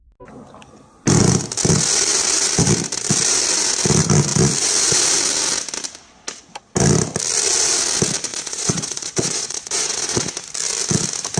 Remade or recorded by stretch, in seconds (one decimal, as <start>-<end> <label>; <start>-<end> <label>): 0.0-8.3 recorded; 8.3-10.3 remade; 10.3-11.4 recorded